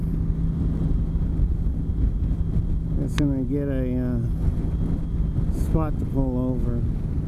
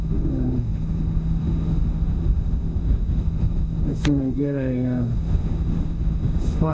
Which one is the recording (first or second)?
first